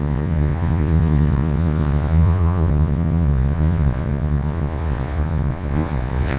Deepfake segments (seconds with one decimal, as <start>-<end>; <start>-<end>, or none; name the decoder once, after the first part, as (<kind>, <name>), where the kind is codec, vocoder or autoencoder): 0.0-6.4 (vocoder, Vocos)